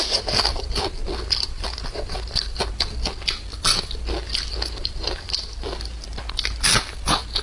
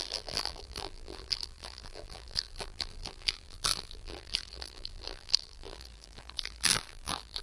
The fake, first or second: second